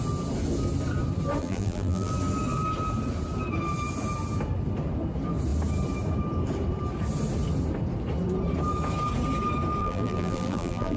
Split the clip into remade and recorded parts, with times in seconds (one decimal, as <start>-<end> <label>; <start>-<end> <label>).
0.0-1.4 recorded; 1.4-2.1 remade; 2.1-9.8 recorded; 9.8-11.0 remade